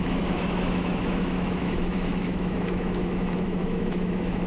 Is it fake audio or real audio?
fake